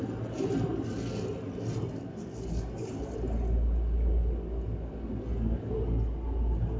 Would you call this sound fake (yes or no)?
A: no